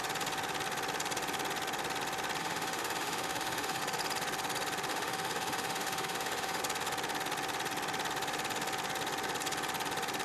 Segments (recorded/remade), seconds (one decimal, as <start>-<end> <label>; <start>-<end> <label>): 0.0-2.4 recorded; 2.4-3.8 remade; 3.8-4.9 recorded; 4.9-6.6 remade; 6.6-10.2 recorded